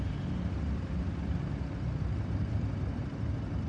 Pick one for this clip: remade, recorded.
recorded